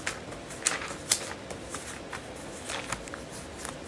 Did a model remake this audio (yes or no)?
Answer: no